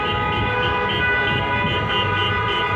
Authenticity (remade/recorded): recorded